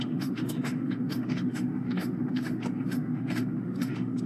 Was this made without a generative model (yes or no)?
no